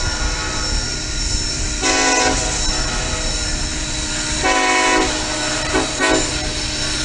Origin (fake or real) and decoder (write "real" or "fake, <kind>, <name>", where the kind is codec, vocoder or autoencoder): real